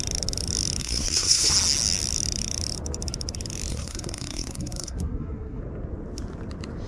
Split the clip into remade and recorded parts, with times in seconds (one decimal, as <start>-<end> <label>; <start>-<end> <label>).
0.0-0.8 recorded; 0.8-1.5 remade; 1.5-3.7 recorded; 3.7-5.6 remade; 5.6-6.9 recorded